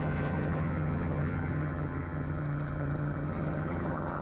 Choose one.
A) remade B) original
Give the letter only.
A